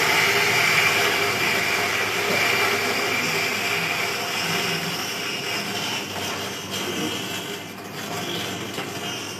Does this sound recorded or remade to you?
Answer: recorded